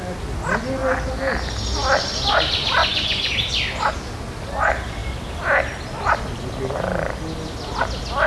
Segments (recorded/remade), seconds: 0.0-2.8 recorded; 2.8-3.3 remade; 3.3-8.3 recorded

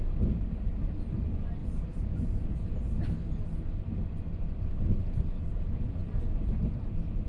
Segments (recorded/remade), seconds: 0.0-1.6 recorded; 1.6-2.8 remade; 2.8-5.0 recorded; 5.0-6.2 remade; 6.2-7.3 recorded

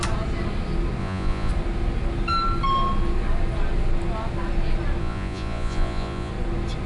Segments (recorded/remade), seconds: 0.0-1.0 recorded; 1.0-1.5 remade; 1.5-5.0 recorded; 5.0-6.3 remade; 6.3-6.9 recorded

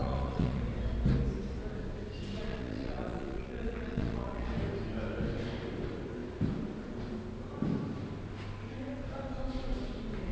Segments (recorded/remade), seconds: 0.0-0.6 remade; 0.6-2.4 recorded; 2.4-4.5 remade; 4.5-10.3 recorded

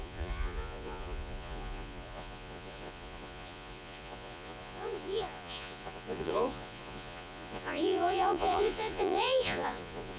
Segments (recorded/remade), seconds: 0.0-10.2 remade

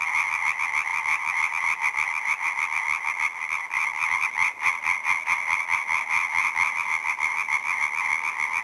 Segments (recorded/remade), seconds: 0.0-8.6 recorded

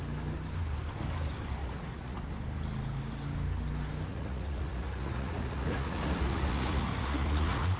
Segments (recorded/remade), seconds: 0.0-1.6 recorded; 1.6-2.2 remade; 2.2-4.1 recorded; 4.1-7.8 remade

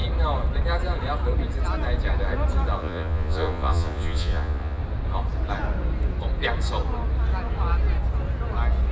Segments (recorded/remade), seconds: 0.0-2.8 recorded; 2.8-4.8 remade; 4.8-8.9 recorded